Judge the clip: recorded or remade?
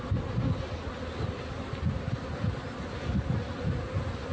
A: recorded